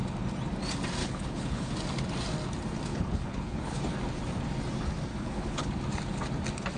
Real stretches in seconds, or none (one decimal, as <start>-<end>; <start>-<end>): 0.0-1.0; 1.7-2.9; 3.8-5.1; 5.8-6.8